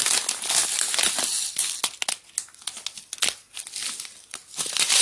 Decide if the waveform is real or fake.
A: real